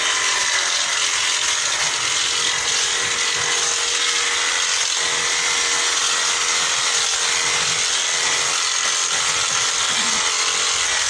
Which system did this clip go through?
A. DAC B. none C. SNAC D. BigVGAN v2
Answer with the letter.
B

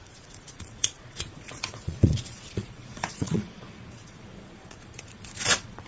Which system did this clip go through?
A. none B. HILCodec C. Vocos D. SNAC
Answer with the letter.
C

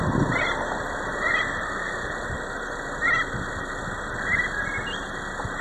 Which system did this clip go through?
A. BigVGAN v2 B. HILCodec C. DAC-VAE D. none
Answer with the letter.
D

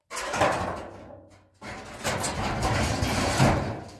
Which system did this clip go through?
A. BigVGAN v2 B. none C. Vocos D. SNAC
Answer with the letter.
B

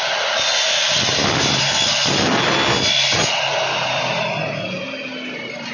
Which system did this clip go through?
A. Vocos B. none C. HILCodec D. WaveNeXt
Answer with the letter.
B